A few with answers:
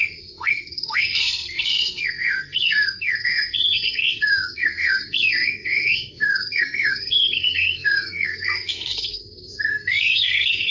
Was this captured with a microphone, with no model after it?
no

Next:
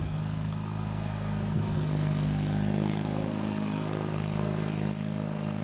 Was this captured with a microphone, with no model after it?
no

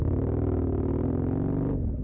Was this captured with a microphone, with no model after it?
yes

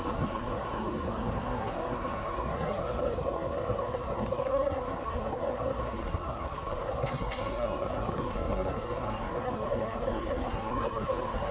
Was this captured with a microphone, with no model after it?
no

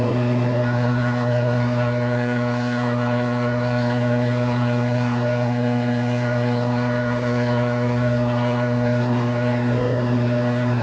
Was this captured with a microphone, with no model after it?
no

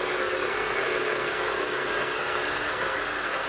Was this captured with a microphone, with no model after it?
no